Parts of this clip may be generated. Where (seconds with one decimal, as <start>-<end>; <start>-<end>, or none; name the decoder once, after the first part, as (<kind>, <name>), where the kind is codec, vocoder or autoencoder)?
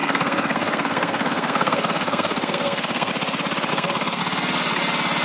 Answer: 0.0-3.1 (codec, SNAC); 3.7-4.2